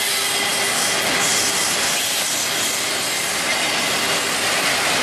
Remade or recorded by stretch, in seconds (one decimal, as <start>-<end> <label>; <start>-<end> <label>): 0.0-5.0 recorded